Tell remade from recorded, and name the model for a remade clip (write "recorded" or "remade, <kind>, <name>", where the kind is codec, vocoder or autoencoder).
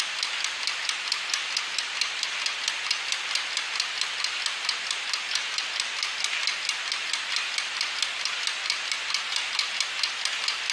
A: recorded